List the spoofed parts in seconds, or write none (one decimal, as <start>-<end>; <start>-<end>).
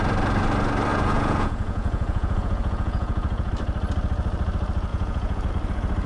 0.9-3.5; 4.9-5.5